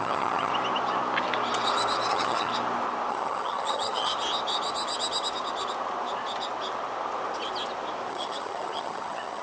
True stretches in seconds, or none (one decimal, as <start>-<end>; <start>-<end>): 0.5-2.1; 2.5-3.1; 4.1-8.1